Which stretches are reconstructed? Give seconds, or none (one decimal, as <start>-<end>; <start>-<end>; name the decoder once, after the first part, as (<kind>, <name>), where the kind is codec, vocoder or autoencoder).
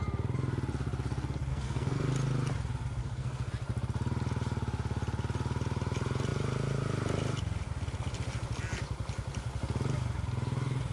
1.5-2.1 (codec, SNAC); 3.0-3.5